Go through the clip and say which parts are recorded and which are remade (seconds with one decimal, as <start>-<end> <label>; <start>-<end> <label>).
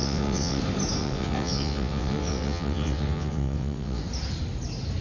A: 0.0-0.6 remade; 0.6-1.0 recorded; 1.0-4.0 remade; 4.0-5.0 recorded